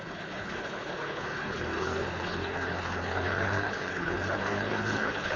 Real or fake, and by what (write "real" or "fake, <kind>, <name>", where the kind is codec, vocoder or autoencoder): fake, codec, HILCodec